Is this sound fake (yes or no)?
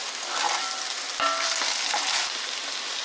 no